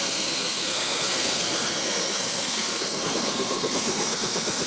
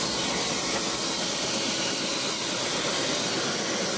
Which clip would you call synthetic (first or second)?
first